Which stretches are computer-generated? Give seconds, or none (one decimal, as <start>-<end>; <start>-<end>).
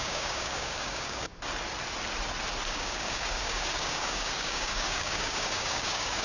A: 0.0-1.3; 2.7-6.2